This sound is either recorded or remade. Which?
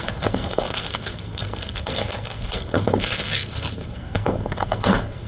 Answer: remade